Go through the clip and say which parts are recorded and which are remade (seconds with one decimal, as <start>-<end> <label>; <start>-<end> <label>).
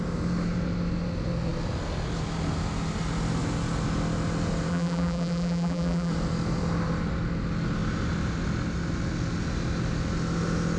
0.0-4.7 recorded; 4.7-6.1 remade; 6.1-10.8 recorded